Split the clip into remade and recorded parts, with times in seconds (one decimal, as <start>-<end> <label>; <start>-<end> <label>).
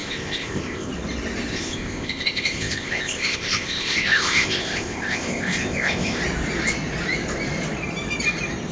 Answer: 0.0-0.9 remade; 0.9-1.5 recorded; 1.5-6.2 remade; 6.2-8.7 recorded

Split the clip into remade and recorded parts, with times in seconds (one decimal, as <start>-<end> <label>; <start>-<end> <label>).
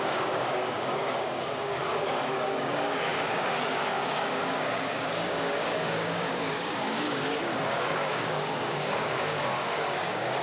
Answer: 0.0-10.4 remade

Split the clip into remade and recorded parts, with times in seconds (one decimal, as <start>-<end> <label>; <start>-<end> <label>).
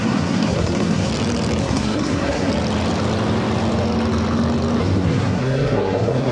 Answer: 0.0-1.1 remade; 1.1-1.6 recorded; 1.6-2.5 remade; 2.5-4.8 recorded; 4.8-6.3 remade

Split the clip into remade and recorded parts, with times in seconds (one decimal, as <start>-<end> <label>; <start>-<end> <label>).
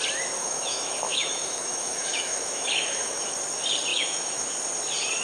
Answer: 0.0-0.4 recorded; 0.4-3.3 remade; 3.3-3.9 recorded; 3.9-4.5 remade; 4.5-5.2 recorded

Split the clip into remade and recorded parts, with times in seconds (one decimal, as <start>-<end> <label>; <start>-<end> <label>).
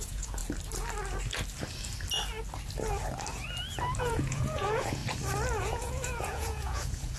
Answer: 0.0-0.4 remade; 0.4-4.0 recorded; 4.0-5.0 remade; 5.0-5.6 recorded; 5.6-7.2 remade